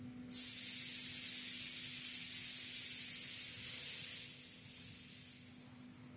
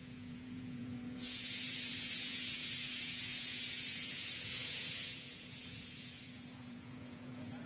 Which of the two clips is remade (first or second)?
second